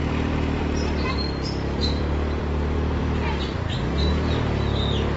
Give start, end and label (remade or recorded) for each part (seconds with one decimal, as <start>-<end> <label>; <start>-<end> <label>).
0.0-3.0 remade; 3.0-5.2 recorded